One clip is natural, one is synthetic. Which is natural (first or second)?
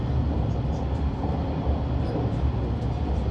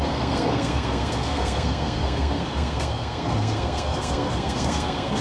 first